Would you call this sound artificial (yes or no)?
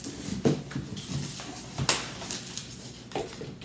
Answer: no